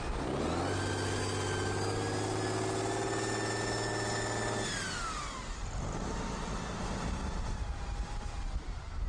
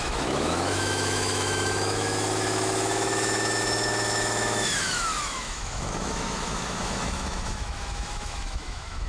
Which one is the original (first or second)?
first